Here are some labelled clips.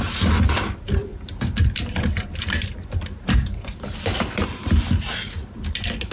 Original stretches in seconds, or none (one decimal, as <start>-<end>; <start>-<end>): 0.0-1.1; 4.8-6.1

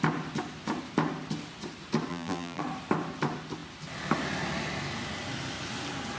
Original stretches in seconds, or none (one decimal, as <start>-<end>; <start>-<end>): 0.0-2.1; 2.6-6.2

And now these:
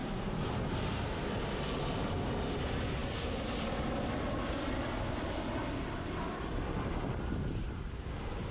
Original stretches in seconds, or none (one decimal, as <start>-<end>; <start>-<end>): 1.1-3.0; 3.7-8.5

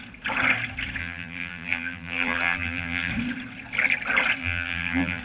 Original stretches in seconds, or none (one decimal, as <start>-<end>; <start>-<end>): 0.0-1.0; 3.1-4.4

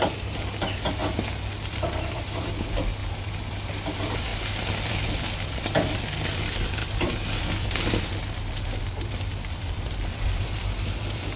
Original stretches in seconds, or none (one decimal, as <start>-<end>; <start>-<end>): 1.0-1.7; 4.3-4.9